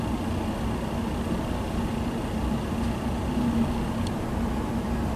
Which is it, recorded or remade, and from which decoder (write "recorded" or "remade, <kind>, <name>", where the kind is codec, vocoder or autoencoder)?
recorded